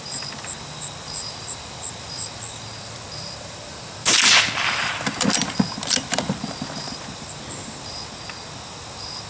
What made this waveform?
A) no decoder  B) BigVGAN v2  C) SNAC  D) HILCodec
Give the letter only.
B